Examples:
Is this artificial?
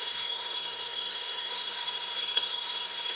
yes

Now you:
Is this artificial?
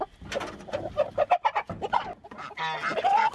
no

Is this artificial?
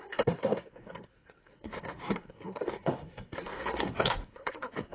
yes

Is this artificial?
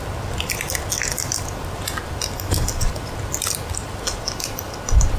no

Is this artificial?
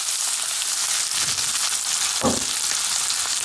no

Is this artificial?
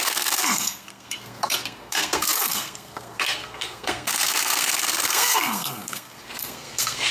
yes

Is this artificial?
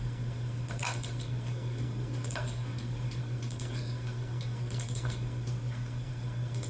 yes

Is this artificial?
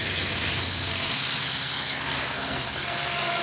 yes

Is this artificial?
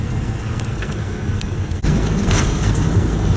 yes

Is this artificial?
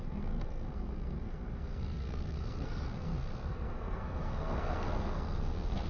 yes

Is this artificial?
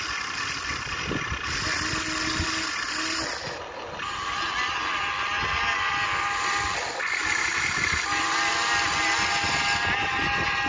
no